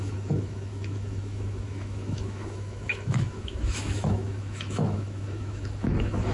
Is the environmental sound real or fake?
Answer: fake